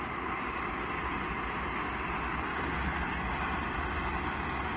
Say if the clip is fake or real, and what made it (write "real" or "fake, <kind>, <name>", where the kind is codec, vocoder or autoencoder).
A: real